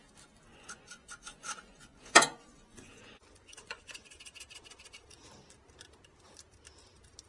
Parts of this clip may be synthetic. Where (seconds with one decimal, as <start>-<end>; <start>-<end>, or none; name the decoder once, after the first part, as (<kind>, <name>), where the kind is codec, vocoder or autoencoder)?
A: 0.5-4.2 (vocoder, Vocos)